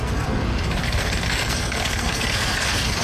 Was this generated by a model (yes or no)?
yes